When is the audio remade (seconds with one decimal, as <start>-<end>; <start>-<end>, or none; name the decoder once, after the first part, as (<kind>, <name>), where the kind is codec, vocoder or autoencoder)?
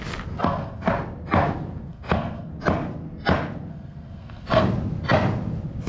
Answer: 0.4-0.9 (codec, SNAC); 1.9-2.5; 3.7-4.6